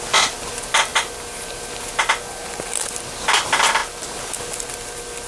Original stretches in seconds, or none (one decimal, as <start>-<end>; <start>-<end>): 0.0-0.9; 1.7-5.3